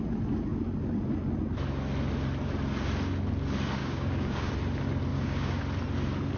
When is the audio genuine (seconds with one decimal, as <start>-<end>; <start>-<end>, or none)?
0.0-3.8; 4.5-5.1; 5.6-6.4